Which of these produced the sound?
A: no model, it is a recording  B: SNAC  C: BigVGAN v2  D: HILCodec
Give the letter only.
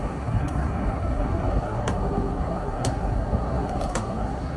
B